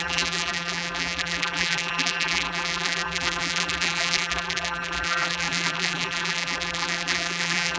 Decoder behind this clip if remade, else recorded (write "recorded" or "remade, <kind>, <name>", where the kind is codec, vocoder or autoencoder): remade, vocoder, BigVGAN v2